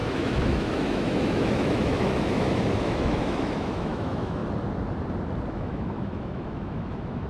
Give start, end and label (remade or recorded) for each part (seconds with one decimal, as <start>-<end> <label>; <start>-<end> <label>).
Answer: 0.0-4.4 remade; 4.4-5.5 recorded; 5.5-7.3 remade